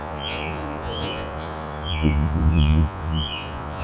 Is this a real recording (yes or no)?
no